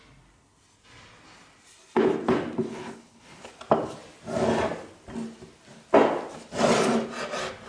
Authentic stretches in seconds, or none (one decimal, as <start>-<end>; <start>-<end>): 0.0-2.7; 3.5-7.7

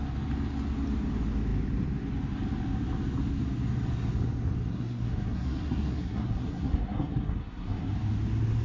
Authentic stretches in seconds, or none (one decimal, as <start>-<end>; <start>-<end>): 0.0-4.7; 7.9-8.6

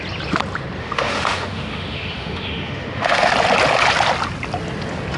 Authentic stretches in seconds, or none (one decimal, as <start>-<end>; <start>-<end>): 0.0-0.8; 3.3-5.2

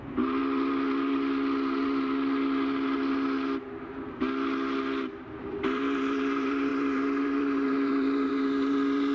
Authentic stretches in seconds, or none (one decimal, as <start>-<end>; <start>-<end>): 0.4-5.4